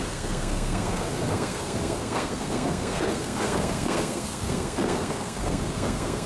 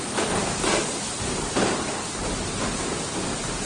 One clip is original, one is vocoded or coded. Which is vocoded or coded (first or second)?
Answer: first